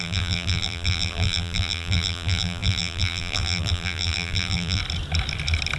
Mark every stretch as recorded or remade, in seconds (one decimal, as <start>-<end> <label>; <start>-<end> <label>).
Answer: 0.0-4.8 remade; 4.8-5.8 recorded